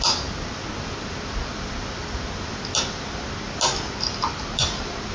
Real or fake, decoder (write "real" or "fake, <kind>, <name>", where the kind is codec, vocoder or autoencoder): real